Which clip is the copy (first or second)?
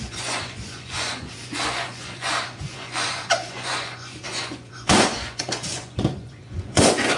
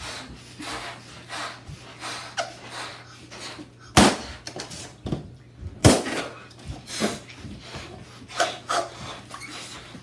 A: first